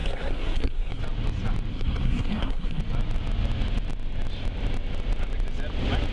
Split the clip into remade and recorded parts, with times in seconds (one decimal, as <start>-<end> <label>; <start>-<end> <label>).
0.0-1.0 remade; 1.0-1.7 recorded; 1.7-2.8 remade; 2.8-6.1 recorded